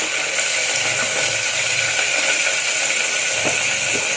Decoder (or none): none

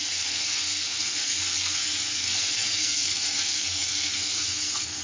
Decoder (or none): codec, SNAC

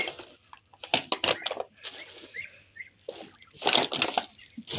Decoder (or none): none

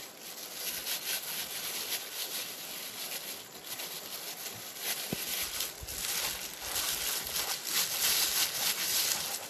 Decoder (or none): none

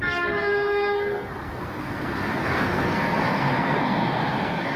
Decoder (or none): codec, SNAC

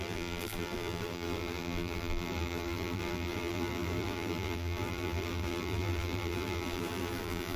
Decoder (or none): vocoder, BigVGAN v2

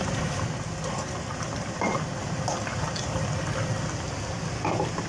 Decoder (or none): none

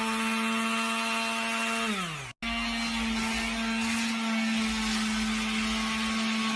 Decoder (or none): none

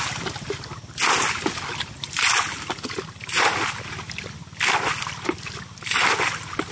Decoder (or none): none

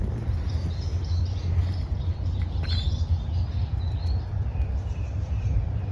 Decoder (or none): none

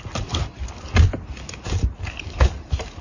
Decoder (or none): none